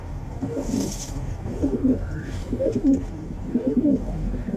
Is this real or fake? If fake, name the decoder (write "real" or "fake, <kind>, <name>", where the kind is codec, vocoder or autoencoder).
fake, codec, DAC